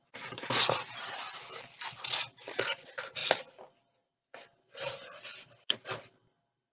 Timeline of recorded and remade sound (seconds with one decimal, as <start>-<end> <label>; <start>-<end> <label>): 0.0-6.7 recorded